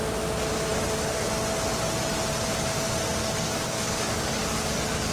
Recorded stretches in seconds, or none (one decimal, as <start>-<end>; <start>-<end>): 0.0-3.2